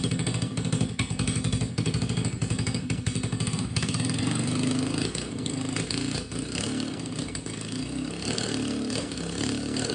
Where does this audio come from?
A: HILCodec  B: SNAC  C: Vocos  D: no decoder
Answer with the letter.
B